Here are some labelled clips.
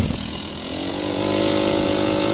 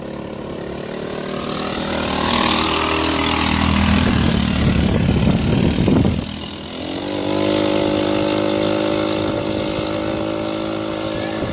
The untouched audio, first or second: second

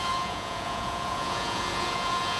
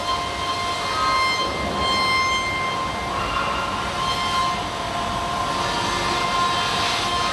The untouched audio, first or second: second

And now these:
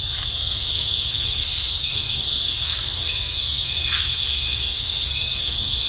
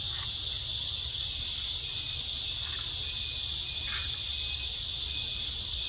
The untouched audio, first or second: second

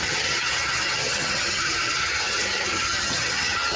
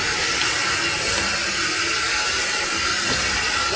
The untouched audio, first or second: second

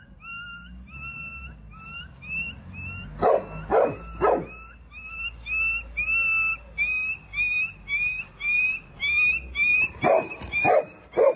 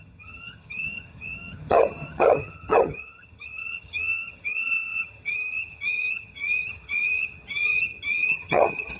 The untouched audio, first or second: first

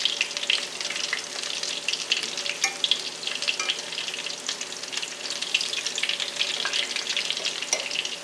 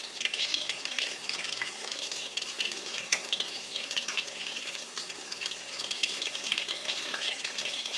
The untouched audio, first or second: first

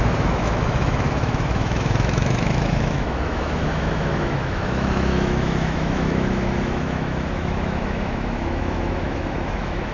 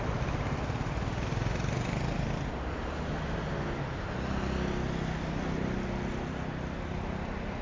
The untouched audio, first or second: second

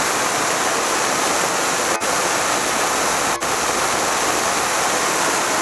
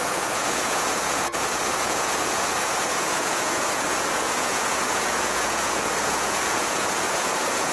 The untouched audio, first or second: first